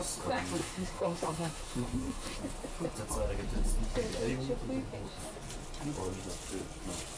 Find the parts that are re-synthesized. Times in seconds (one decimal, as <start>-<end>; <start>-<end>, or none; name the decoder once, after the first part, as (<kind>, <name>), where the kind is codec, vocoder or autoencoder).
0.6-2.4 (codec, SNAC)